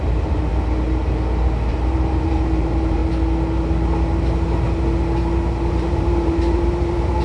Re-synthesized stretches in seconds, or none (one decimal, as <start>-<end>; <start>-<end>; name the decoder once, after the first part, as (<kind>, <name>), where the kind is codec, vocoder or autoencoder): 0.0-0.5 (vocoder, BigVGAN v2); 1.7-3.0; 5.7-7.2